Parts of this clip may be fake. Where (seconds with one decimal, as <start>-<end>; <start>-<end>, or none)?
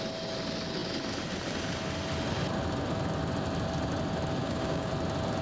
4.4-4.9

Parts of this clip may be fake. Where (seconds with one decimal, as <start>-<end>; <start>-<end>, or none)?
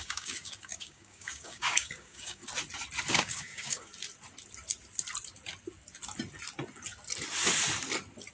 0.0-2.4; 3.1-3.9